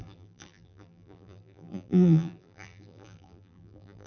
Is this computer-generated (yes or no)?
yes